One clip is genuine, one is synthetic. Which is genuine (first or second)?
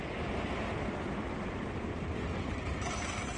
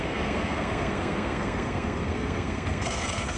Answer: first